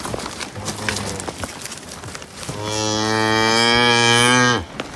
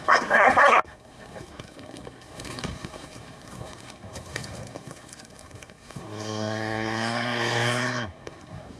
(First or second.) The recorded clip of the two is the first